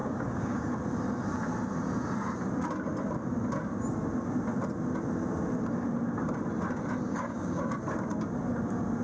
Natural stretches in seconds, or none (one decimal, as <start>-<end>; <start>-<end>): 0.7-7.1; 7.8-9.0